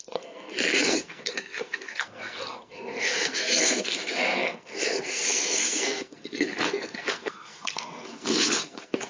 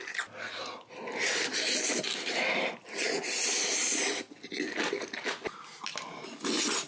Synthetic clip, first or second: first